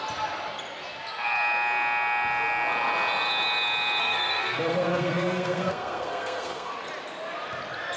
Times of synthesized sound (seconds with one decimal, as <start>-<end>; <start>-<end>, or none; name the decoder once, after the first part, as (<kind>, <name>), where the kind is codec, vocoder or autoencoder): 4.0-6.7 (codec, SNAC)